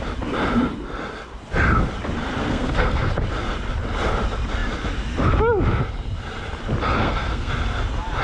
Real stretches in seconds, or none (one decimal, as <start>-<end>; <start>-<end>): 0.0-2.4; 3.1-7.0; 7.5-8.2